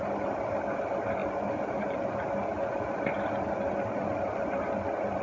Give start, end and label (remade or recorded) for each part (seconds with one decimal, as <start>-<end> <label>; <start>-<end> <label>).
0.0-5.2 recorded